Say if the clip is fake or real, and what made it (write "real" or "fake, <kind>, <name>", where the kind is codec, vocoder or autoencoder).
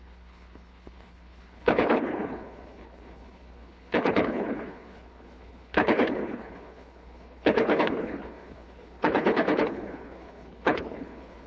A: fake, codec, HILCodec